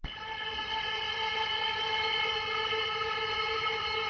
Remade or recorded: recorded